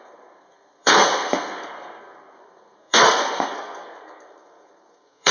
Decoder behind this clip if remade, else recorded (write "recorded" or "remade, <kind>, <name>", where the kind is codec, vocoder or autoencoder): remade, codec, SNAC